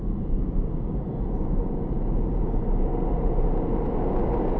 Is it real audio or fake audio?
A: real